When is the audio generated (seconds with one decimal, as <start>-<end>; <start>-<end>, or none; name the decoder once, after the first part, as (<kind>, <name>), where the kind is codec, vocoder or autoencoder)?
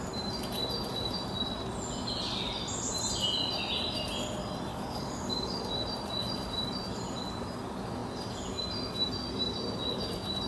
4.7-5.6 (codec, DAC)